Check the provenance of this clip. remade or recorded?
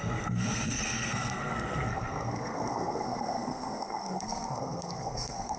remade